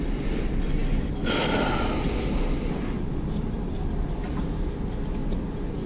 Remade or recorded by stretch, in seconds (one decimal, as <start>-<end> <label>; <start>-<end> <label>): 0.0-5.9 recorded